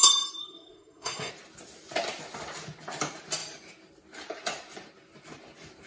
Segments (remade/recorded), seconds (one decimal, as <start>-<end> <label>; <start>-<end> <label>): 0.0-0.4 recorded; 0.4-1.3 remade; 1.3-5.9 recorded